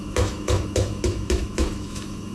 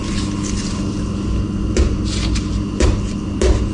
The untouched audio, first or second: second